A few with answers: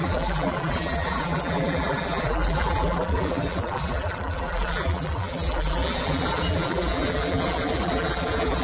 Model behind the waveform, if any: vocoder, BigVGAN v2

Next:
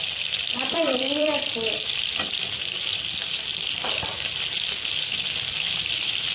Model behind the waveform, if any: vocoder, BigVGAN v2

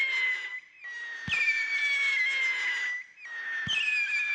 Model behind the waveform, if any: none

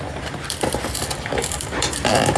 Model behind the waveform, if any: vocoder, BigVGAN v2